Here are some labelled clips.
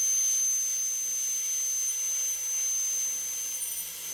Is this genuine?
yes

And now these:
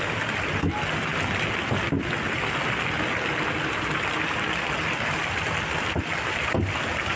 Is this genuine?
yes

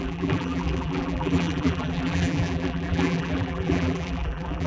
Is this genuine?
no